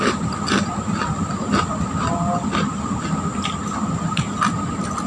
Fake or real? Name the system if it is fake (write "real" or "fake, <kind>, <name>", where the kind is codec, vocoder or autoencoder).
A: real